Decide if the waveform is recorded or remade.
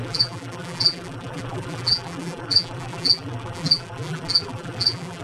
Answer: remade